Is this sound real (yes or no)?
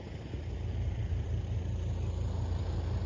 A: yes